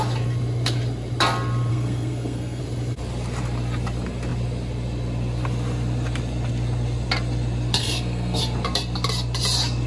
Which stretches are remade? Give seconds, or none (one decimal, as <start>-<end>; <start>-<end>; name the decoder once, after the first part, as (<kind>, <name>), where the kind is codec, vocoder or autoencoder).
1.7-2.6 (codec, SNAC); 7.8-8.4